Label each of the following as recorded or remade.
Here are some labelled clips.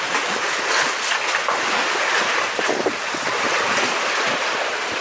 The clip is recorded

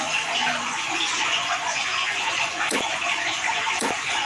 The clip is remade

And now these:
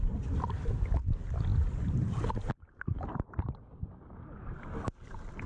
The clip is recorded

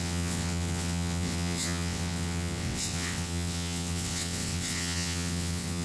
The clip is remade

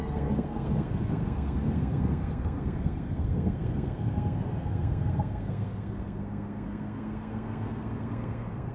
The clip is remade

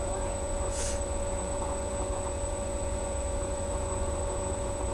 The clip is remade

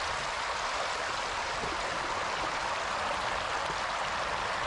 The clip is recorded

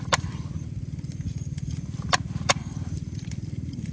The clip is remade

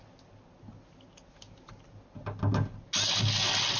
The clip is recorded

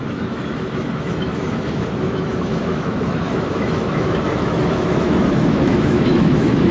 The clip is remade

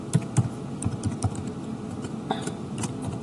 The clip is recorded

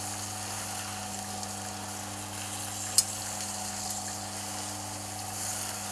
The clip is recorded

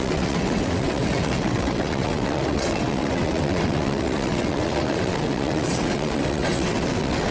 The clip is remade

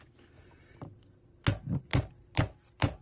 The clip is remade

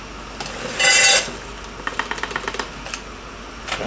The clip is recorded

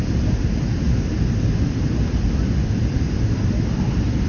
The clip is recorded